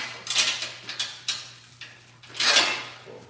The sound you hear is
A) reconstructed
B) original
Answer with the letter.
B